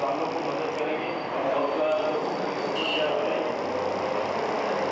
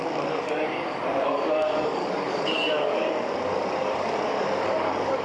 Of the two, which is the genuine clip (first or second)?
first